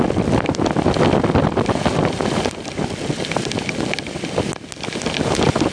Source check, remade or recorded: recorded